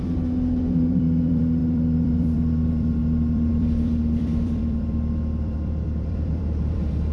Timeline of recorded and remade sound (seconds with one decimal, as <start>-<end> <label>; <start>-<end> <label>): 0.0-7.1 remade